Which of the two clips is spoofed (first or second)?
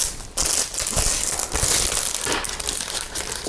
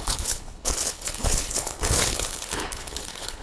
second